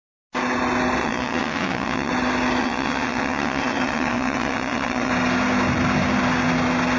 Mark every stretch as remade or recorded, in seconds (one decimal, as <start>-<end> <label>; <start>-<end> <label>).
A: 0.0-1.0 recorded; 1.0-2.1 remade; 2.1-2.6 recorded; 2.6-5.1 remade; 5.1-7.0 recorded